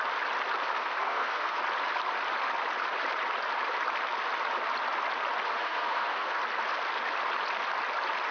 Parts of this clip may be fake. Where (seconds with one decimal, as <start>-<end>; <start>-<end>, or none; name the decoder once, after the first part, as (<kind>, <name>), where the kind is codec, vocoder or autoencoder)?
0.8-1.6 (codec, SNAC); 5.6-6.4